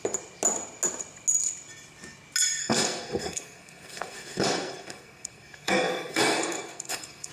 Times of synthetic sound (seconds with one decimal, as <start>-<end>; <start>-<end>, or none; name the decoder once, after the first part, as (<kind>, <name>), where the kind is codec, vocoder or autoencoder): 2.6-7.3 (codec, SNAC)